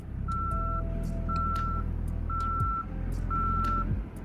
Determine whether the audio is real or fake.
real